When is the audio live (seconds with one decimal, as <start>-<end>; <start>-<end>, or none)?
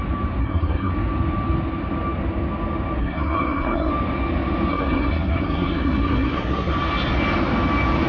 0.0-0.4; 0.9-3.0; 3.9-4.7; 6.7-8.1